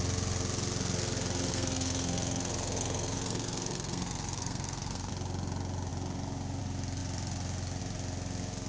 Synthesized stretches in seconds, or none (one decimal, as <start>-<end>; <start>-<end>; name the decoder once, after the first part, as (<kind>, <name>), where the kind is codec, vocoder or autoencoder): 1.5-5.1 (codec, SNAC)